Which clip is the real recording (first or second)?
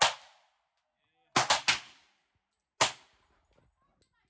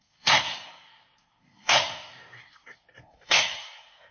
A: first